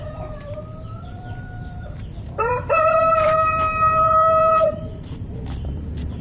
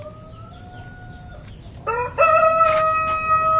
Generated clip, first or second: first